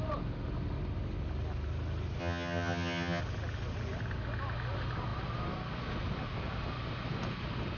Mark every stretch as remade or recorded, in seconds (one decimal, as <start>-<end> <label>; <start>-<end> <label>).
0.0-2.2 recorded; 2.2-3.2 remade; 3.2-7.8 recorded